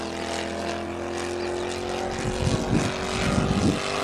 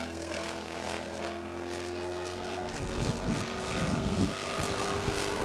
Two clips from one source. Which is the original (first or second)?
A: first